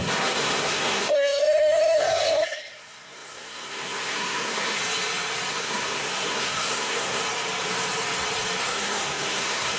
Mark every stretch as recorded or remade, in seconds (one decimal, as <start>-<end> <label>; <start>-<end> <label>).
0.0-4.8 remade; 4.8-5.5 recorded; 5.5-7.2 remade; 7.2-8.6 recorded; 8.6-9.8 remade